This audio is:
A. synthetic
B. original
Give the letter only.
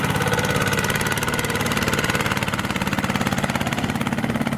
A